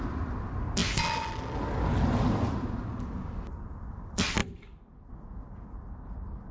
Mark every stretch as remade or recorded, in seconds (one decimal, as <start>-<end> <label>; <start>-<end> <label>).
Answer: 0.0-6.5 recorded